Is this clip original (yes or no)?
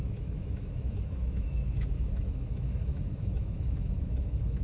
no